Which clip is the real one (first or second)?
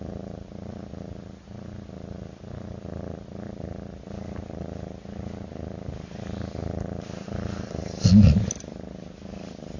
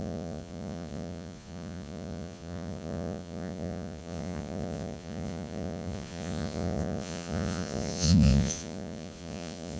first